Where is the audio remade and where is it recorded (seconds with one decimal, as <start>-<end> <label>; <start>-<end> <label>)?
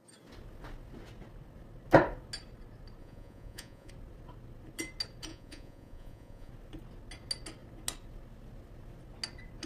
0.0-3.0 recorded; 3.0-3.9 remade; 3.9-5.3 recorded; 5.3-6.5 remade; 6.5-9.7 recorded